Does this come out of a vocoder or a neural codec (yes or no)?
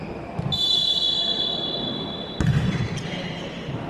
no